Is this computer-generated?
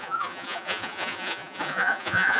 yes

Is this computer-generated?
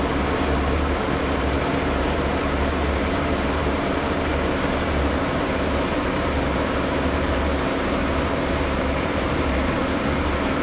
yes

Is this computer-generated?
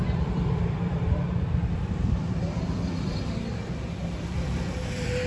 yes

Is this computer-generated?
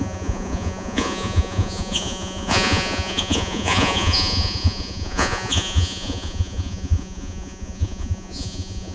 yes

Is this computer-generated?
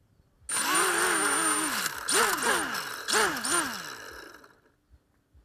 no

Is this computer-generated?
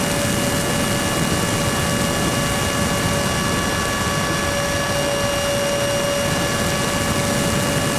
no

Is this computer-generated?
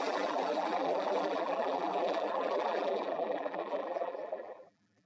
yes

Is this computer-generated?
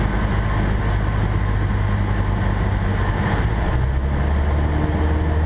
no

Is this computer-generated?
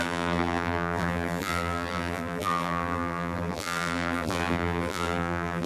yes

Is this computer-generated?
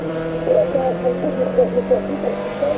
yes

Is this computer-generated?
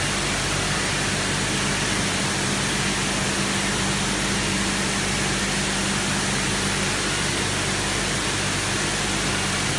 no